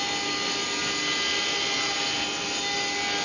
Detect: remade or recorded recorded